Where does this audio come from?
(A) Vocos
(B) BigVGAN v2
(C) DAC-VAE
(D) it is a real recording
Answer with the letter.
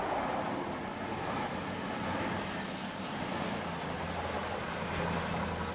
D